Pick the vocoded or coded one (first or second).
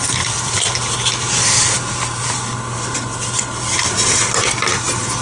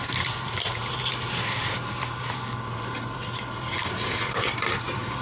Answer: second